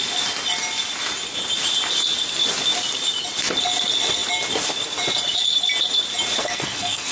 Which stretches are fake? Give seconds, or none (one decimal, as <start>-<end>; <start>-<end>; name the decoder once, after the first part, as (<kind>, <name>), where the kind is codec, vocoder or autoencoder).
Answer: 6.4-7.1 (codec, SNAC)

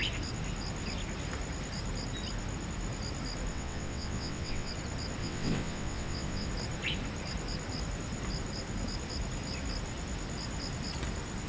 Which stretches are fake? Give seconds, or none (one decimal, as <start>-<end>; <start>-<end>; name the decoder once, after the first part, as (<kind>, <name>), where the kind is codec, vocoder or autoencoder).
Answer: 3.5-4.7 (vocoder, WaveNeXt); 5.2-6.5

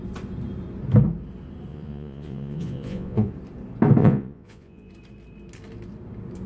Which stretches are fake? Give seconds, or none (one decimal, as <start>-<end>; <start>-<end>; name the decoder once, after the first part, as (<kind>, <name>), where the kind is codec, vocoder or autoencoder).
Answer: 1.7-3.3 (vocoder, Vocos); 4.0-4.9